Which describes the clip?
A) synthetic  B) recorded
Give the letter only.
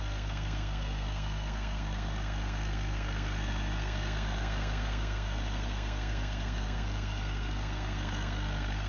A